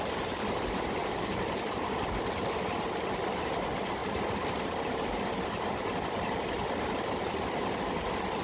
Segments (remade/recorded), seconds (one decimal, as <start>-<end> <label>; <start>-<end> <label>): 0.0-1.0 recorded; 1.0-2.1 remade; 2.1-4.0 recorded; 4.0-8.4 remade